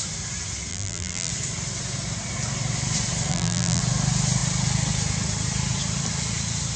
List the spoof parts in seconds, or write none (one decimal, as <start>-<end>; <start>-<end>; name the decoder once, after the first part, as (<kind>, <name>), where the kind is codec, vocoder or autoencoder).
0.7-1.3 (vocoder, BigVGAN v2); 3.3-3.8